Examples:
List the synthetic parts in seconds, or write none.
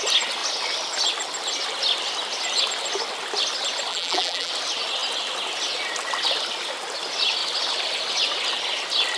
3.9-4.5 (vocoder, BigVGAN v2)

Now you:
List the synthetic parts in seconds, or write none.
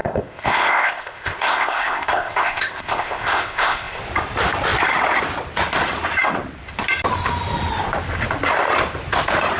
0.0-4.0 (codec, ZipCodec)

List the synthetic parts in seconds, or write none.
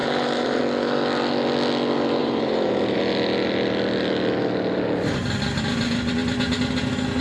0.0-0.6 (vocoder, BigVGAN v2); 2.2-3.0